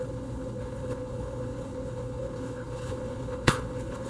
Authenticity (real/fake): fake